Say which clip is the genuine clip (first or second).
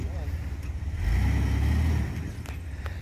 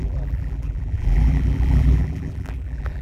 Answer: first